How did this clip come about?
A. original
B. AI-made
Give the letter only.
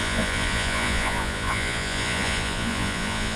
B